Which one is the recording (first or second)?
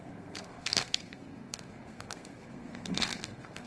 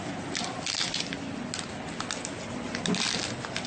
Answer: second